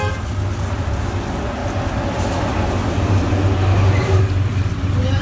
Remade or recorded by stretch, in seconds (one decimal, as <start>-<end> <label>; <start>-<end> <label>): 0.0-5.2 recorded